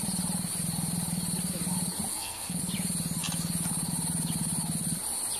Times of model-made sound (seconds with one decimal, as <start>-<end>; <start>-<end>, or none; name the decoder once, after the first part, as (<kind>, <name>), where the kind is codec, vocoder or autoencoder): 2.1-2.6 (codec, SNAC)